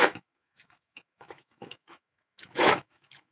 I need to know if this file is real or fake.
fake